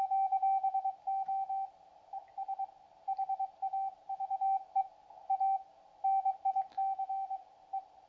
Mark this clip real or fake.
real